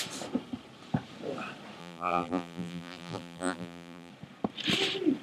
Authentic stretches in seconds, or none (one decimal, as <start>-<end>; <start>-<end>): 0.0-1.8; 4.1-5.2